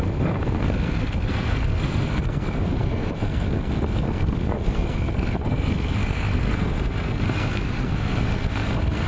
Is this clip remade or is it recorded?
remade